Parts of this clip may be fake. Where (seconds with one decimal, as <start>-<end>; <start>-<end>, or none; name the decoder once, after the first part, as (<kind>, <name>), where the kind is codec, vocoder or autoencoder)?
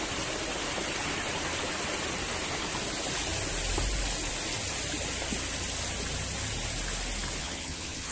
7.4-8.1 (vocoder, HiFi-GAN)